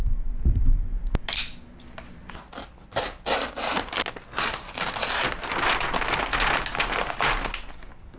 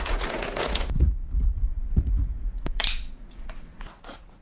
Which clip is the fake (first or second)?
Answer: second